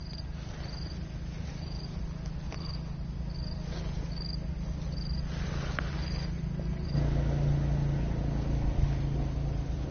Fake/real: real